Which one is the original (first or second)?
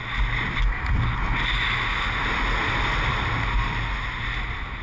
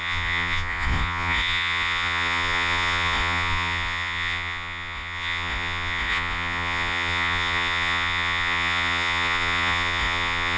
first